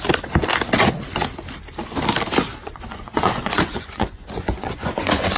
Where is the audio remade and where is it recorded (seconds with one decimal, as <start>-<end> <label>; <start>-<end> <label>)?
0.0-2.5 recorded; 2.5-5.4 remade